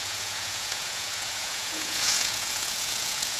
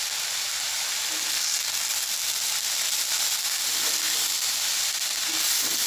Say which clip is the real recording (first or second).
second